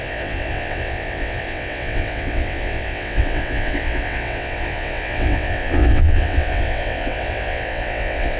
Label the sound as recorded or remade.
remade